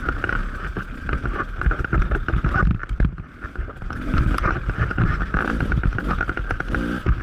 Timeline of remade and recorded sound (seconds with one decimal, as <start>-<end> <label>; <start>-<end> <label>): 0.0-0.4 remade; 0.4-1.0 recorded; 1.0-7.2 remade